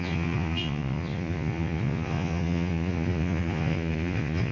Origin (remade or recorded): remade